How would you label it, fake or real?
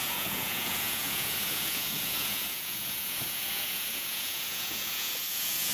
fake